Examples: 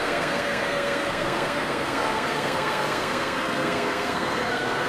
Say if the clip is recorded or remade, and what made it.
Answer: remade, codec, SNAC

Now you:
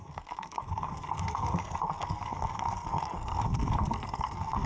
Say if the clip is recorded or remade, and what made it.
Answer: remade, codec, SNAC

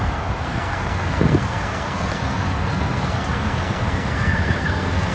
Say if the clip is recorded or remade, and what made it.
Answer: remade, codec, SNAC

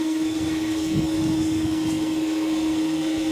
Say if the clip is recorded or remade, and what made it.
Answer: remade, codec, SNAC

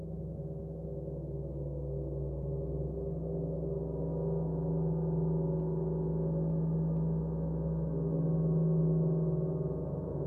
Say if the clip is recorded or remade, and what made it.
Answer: recorded